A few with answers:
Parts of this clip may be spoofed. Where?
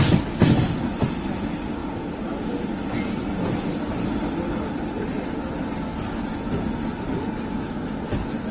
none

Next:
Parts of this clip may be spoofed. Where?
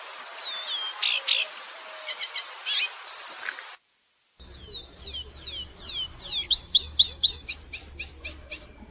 6.5-7.6 (codec, DAC)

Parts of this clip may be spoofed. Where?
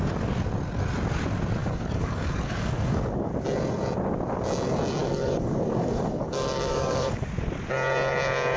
1.6-3.3 (codec, DAC); 5.0-7.3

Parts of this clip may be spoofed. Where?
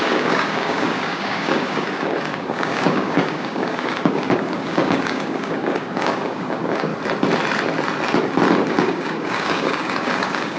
0.0-6.9 (codec, DAC); 8.7-10.6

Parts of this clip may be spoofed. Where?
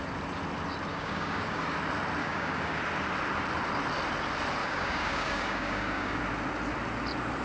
0.9-1.6 (codec, DAC); 2.2-2.8; 4.6-6.2